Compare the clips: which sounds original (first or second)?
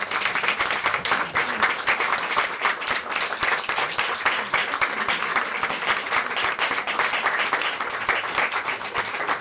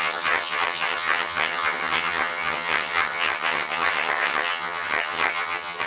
first